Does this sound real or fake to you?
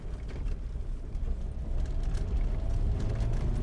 real